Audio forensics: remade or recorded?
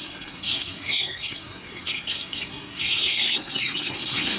remade